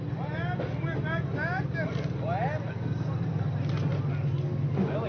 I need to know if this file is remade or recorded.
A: recorded